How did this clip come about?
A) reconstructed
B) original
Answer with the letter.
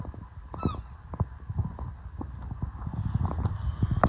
B